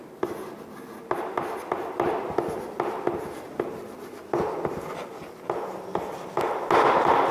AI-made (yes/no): no